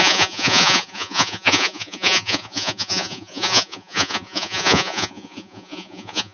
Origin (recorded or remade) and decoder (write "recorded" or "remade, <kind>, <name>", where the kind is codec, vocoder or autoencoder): remade, vocoder, Vocos